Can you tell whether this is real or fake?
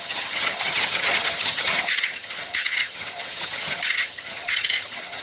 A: fake